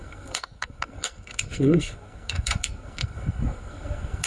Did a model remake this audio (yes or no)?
yes